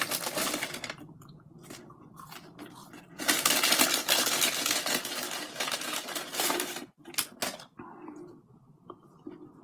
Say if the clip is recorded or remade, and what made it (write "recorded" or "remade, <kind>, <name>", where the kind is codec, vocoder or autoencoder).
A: recorded